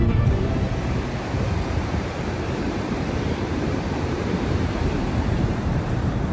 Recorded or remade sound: remade